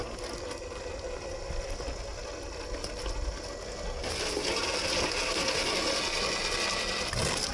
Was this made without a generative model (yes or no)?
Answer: yes